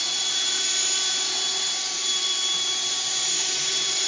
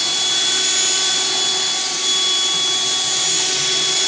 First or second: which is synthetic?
first